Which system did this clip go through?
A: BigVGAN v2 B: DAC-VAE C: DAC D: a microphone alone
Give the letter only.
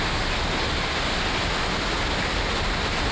D